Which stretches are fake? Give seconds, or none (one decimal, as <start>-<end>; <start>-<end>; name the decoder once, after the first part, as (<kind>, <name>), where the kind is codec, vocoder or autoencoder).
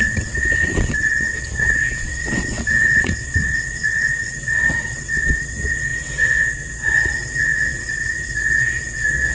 0.0-9.3 (vocoder, WaveNeXt)